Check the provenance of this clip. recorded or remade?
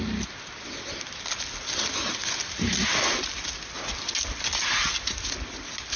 recorded